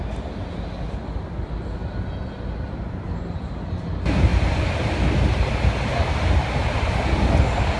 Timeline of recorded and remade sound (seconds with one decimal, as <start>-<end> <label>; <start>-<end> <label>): 0.0-7.8 recorded